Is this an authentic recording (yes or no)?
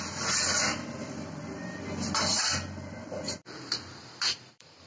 no